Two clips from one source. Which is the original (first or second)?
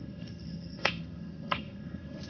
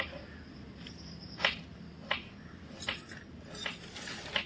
second